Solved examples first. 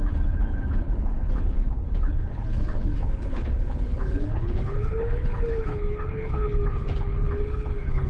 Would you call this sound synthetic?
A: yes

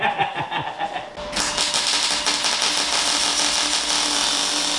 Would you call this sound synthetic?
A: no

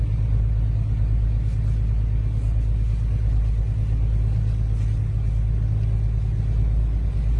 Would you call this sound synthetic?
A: no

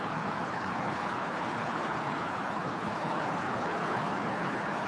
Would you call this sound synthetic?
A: yes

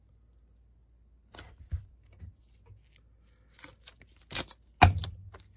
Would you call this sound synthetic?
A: no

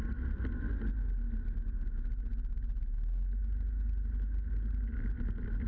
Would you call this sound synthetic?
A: no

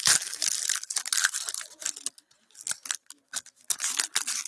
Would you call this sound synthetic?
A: no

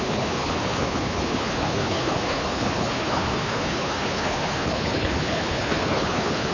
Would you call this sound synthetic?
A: yes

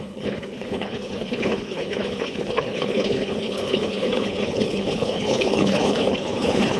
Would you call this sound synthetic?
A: yes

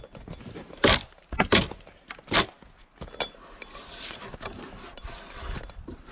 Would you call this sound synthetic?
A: no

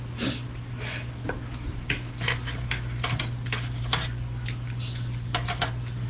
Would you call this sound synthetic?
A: no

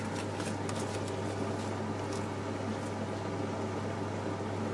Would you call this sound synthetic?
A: no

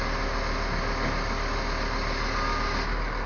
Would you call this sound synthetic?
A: no